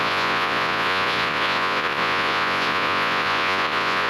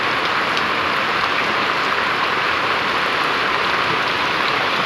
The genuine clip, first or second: second